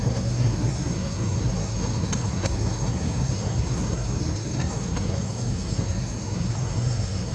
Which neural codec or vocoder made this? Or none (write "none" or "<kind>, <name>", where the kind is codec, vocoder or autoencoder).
codec, SNAC